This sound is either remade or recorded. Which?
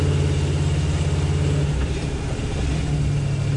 recorded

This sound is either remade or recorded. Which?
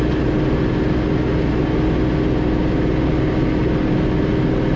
recorded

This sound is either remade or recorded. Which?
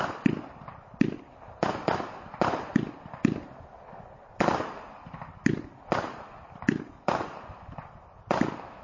recorded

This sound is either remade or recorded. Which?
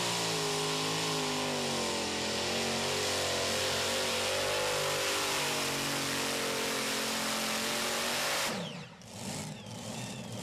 recorded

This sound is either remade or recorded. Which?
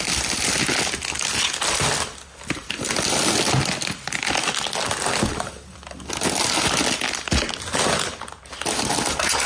recorded